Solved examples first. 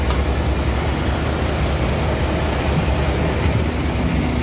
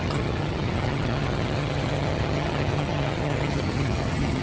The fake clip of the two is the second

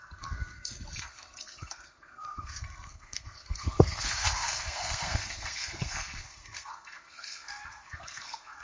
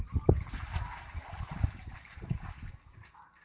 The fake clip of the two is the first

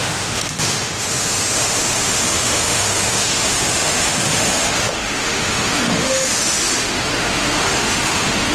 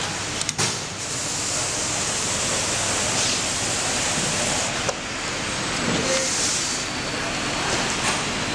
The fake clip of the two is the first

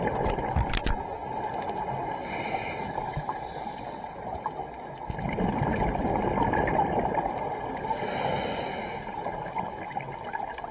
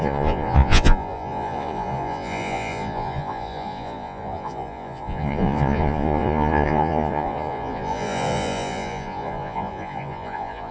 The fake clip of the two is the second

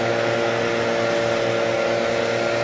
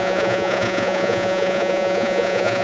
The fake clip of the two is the second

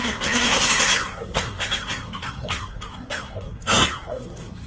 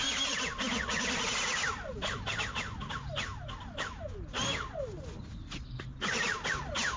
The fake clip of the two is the first